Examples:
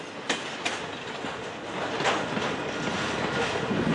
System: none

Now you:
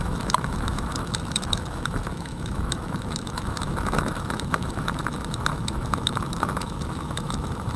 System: autoencoder, DAC-VAE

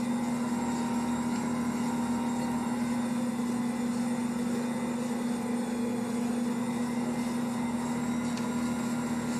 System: none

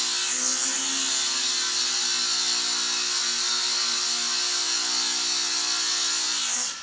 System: none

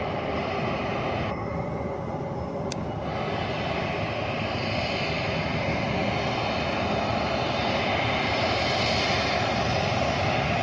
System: none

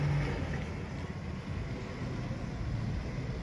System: none